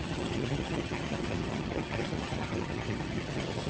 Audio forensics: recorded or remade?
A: remade